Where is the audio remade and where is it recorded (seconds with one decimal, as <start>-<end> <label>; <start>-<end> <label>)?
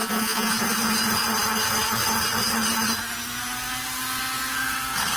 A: 0.0-0.5 remade; 0.5-5.2 recorded